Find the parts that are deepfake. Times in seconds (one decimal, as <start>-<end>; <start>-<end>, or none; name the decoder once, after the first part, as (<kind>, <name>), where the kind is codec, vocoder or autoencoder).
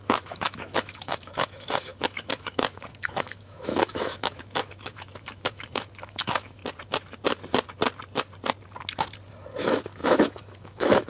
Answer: 0.0-6.6 (autoencoder, DAC-VAE); 9.6-11.1